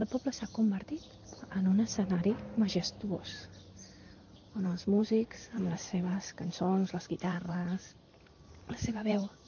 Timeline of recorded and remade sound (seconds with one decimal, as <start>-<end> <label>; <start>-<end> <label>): 0.0-4.1 recorded; 4.1-9.5 remade